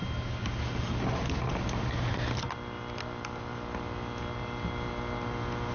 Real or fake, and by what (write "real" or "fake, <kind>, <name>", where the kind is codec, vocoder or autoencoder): real